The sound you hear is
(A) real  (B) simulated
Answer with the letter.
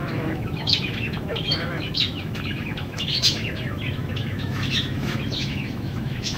B